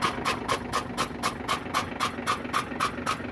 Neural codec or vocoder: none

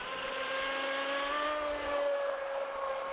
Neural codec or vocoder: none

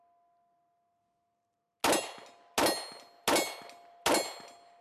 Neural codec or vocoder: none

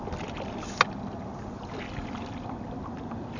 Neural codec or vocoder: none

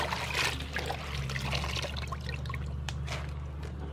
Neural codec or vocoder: none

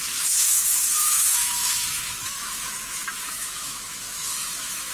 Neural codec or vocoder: autoencoder, DAC-VAE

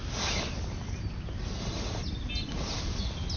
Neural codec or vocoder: none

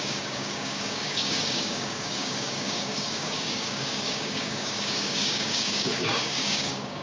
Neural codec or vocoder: codec, DAC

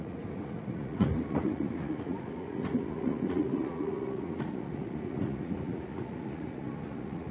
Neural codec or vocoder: vocoder, Vocos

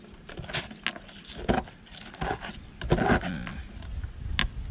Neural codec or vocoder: none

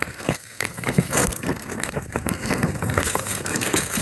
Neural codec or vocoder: codec, SNAC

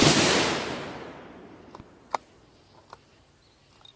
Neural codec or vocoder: none